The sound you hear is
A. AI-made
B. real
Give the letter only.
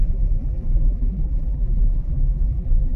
A